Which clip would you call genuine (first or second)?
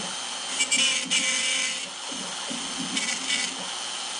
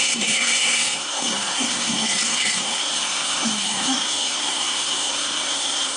first